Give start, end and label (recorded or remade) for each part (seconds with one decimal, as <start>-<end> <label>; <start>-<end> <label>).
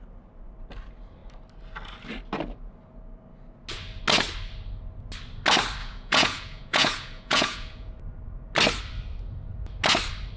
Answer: 0.0-5.8 recorded; 5.8-7.9 remade; 7.9-10.4 recorded